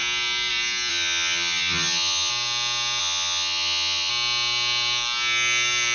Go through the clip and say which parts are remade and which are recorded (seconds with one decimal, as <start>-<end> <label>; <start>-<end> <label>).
0.0-0.9 recorded; 0.9-2.3 remade; 2.3-3.0 recorded; 3.0-4.1 remade; 4.1-5.9 recorded